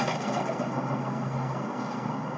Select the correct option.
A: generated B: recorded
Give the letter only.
A